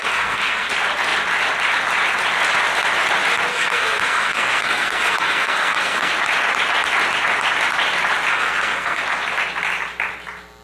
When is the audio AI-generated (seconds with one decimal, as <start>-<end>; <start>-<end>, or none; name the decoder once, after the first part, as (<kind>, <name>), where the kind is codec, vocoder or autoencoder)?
0.0-0.7 (codec, SNAC); 3.5-6.1; 8.3-9.0